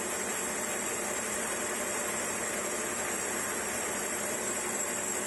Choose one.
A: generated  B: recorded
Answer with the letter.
B